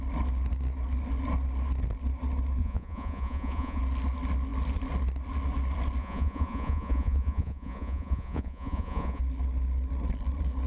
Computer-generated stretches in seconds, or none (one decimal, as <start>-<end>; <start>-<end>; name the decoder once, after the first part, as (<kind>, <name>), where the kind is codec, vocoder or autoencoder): 2.6-3.8 (vocoder, Vocos); 6.0-9.2